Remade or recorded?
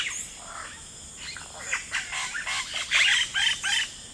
recorded